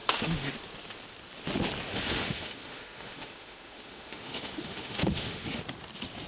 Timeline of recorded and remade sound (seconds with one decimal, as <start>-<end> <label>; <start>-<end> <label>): 0.0-0.5 remade; 0.5-1.9 recorded; 1.9-5.6 remade; 5.6-6.3 recorded